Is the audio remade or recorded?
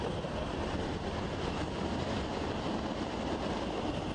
recorded